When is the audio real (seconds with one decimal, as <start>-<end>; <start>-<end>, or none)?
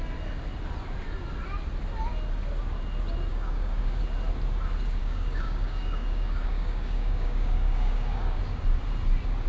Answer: 0.0-3.3; 4.0-5.0; 8.4-9.5